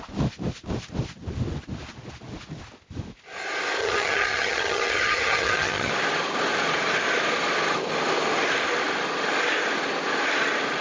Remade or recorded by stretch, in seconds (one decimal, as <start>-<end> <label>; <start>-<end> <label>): 0.0-3.8 recorded; 3.8-5.9 remade; 5.9-10.8 recorded

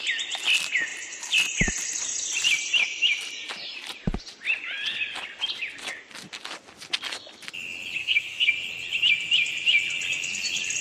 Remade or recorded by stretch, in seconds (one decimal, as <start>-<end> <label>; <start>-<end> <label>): 0.0-8.0 recorded; 8.0-8.5 remade; 8.5-10.8 recorded